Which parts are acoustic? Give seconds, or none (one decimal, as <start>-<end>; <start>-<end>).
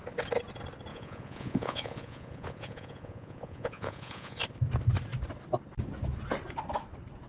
0.0-0.9; 4.4-7.3